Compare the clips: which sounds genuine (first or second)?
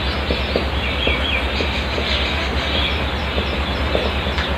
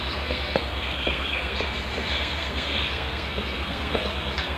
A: first